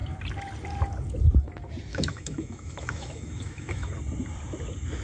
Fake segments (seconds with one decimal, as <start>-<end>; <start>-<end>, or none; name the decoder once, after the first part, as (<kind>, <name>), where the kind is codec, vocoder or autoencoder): 1.9-3.9 (autoencoder, DAC-VAE)

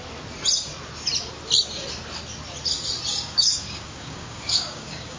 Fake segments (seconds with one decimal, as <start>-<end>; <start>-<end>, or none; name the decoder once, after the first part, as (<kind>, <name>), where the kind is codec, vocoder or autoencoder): 3.1-5.2 (codec, DAC)